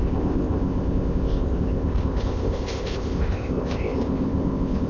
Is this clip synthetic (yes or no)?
yes